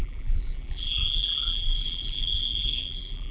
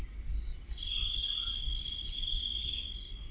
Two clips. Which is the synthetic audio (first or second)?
first